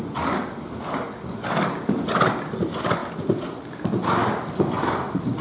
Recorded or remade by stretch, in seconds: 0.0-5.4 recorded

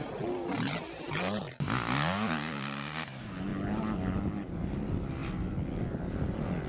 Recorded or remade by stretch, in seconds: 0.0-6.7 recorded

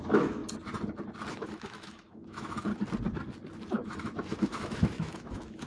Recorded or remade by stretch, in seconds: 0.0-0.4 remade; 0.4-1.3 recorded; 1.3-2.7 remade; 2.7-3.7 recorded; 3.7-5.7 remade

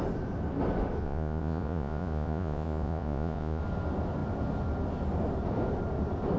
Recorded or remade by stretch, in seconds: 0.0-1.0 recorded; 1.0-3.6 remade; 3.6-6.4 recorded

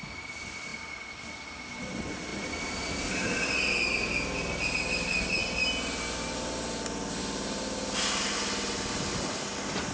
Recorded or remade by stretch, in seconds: 0.0-9.9 recorded

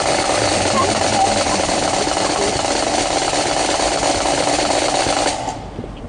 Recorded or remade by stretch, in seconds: 0.0-6.1 recorded

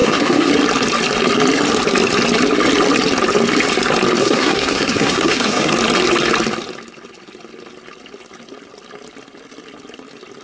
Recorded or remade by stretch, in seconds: 0.0-0.5 remade; 0.5-4.2 recorded; 4.2-5.7 remade; 5.7-10.4 recorded